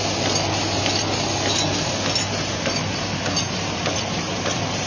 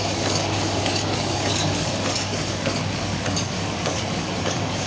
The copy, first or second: second